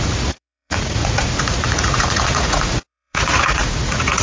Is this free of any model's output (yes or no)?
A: no